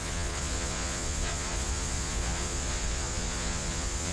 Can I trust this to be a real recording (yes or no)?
no